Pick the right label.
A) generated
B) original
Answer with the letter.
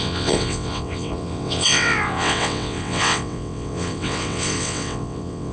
A